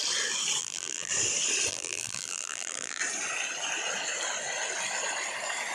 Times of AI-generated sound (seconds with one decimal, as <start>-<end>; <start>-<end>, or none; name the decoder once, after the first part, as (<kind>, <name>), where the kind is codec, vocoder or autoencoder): 0.6-1.1 (vocoder, BigVGAN v2); 1.7-3.0